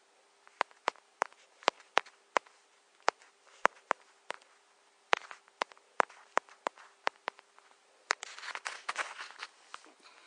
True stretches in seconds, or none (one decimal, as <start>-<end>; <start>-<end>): 0.0-10.3